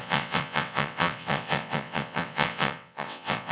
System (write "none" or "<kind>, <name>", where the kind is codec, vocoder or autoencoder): vocoder, WaveNeXt